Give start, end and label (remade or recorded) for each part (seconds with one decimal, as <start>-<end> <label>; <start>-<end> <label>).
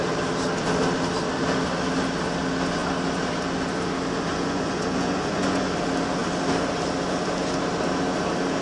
0.0-4.3 recorded; 4.3-5.7 remade; 5.7-8.6 recorded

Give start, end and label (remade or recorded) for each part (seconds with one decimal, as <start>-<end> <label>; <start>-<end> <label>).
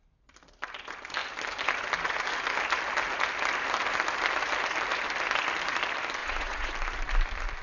0.0-6.2 recorded; 6.2-6.7 remade; 6.7-7.6 recorded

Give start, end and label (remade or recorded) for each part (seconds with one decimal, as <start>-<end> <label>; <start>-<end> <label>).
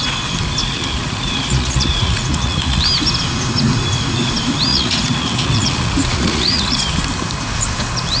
0.0-0.6 recorded; 0.6-2.8 remade; 2.8-4.7 recorded; 4.7-6.8 remade; 6.8-8.2 recorded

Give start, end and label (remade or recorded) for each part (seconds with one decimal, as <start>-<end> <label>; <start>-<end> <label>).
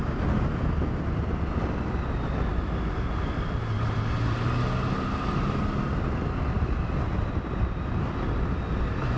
0.0-9.2 recorded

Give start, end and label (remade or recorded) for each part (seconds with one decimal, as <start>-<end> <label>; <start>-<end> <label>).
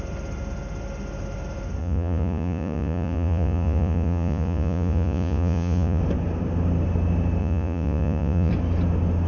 0.0-1.8 recorded; 1.8-6.0 remade; 6.0-7.4 recorded; 7.4-8.5 remade; 8.5-9.3 recorded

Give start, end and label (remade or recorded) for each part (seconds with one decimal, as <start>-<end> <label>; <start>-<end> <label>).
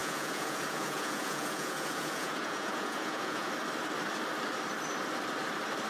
0.0-3.5 remade; 3.5-5.9 recorded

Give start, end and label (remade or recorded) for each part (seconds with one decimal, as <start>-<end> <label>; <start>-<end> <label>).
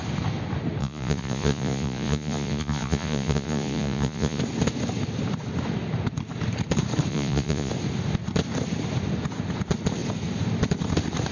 0.0-0.8 recorded; 0.8-4.4 remade; 4.4-7.1 recorded; 7.1-7.7 remade; 7.7-11.3 recorded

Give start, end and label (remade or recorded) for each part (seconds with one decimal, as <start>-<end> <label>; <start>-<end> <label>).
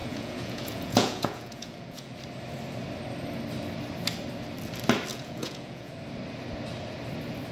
0.0-2.1 remade; 2.1-5.1 recorded; 5.1-5.9 remade; 5.9-7.5 recorded